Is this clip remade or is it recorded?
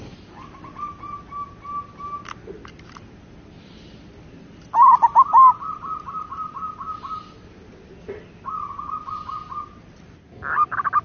recorded